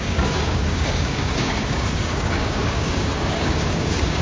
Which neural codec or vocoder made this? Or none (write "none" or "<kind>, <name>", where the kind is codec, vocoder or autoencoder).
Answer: codec, DAC